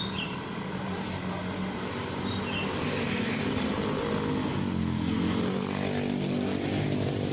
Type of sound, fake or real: real